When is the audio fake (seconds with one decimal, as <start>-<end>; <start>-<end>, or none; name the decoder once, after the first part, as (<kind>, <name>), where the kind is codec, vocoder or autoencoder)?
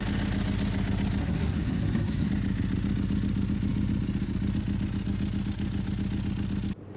1.2-2.3 (codec, SNAC)